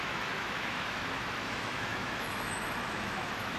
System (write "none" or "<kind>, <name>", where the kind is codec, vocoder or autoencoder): autoencoder, DAC-VAE